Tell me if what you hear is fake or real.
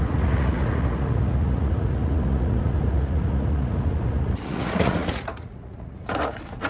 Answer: fake